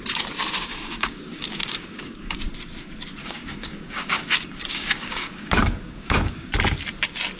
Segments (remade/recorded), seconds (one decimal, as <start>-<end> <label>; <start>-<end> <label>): 0.0-0.7 recorded; 0.7-2.4 remade; 2.4-3.2 recorded; 3.2-6.5 remade; 6.5-7.4 recorded